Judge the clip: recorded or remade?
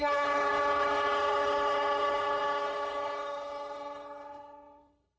remade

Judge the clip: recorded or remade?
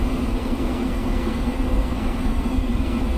remade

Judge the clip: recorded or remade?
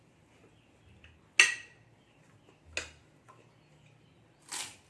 recorded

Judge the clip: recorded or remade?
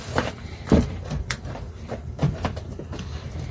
remade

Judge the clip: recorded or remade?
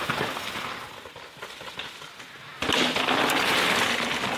recorded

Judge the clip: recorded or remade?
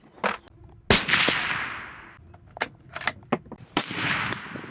recorded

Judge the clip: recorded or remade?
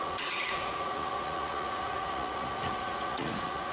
remade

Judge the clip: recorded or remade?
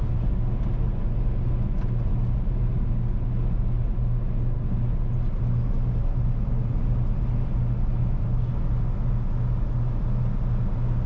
recorded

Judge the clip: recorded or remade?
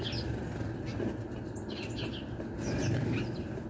recorded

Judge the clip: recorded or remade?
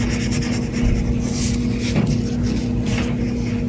recorded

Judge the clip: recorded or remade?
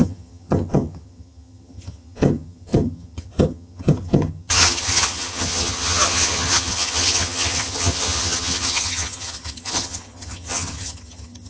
remade